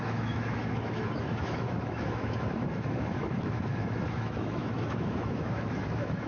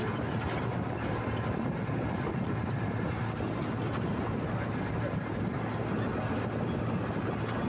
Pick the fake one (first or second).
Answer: first